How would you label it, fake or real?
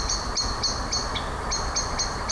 real